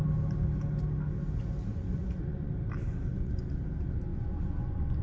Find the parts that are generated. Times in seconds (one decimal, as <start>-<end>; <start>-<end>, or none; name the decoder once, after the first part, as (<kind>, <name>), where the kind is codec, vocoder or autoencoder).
1.7-2.5 (vocoder, Vocos); 3.1-3.6; 4.1-5.0